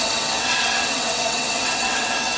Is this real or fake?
fake